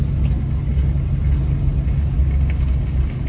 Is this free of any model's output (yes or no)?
yes